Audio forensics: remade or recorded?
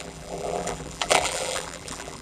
remade